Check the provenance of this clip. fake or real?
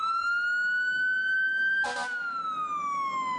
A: real